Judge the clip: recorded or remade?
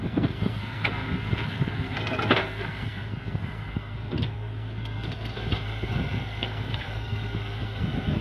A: remade